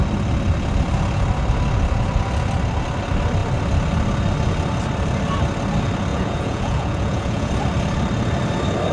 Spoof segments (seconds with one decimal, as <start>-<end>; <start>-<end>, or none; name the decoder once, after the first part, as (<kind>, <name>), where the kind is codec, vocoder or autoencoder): 6.1-7.5 (vocoder, Vocos)